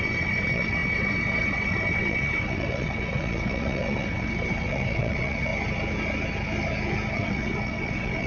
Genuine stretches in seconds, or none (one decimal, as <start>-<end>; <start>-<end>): 5.5-7.1